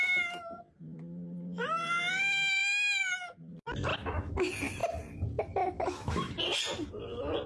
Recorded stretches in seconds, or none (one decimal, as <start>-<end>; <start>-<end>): 0.0-3.9; 4.5-5.6; 6.3-7.5